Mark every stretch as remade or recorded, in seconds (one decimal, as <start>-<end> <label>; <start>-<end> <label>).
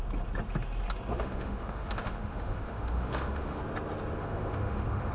0.0-1.1 recorded; 1.1-3.6 remade; 3.6-4.2 recorded; 4.2-5.1 remade